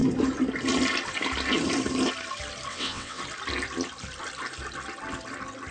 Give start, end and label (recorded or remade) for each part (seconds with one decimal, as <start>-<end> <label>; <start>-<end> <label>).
0.0-2.7 recorded; 2.7-3.2 remade; 3.2-5.7 recorded